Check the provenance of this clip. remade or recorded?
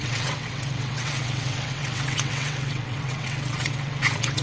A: remade